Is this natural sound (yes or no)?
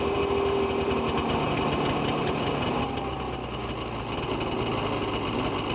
yes